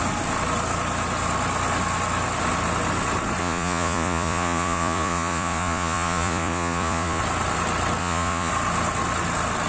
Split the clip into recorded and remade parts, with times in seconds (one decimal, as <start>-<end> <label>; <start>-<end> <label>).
0.0-3.4 recorded; 3.4-7.2 remade; 7.2-8.0 recorded; 8.0-8.5 remade; 8.5-9.7 recorded